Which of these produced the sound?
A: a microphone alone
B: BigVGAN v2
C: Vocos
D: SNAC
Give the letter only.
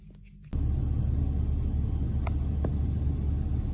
A